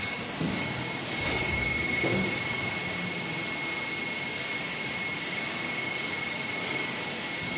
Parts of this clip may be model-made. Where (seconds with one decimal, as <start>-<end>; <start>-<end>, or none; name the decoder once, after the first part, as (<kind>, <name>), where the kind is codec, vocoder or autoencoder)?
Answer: 0.0-2.8 (codec, DAC); 4.3-7.6